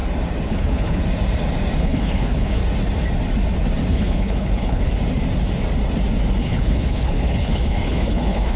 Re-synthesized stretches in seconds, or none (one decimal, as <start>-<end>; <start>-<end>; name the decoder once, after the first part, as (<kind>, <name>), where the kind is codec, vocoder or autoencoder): 0.5-1.0 (codec, HILCodec); 1.8-2.6; 3.9-4.9; 6.4-8.6